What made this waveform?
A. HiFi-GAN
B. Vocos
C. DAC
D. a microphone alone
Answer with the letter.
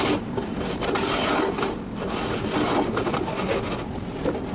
D